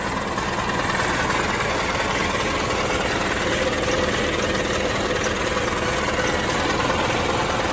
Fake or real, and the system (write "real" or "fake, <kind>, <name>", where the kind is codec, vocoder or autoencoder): real